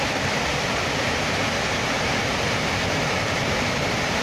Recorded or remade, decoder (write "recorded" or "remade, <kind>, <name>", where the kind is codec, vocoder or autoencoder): remade, vocoder, BigVGAN v2